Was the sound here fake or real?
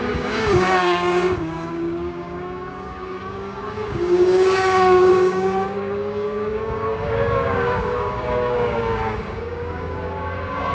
fake